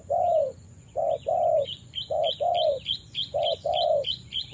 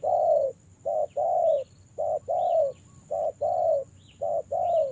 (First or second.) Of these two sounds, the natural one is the second